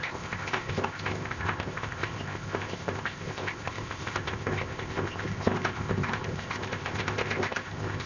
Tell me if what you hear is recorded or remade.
remade